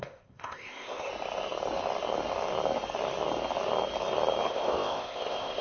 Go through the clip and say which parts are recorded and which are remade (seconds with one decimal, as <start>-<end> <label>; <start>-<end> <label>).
0.0-1.1 remade; 1.1-4.5 recorded; 4.5-5.6 remade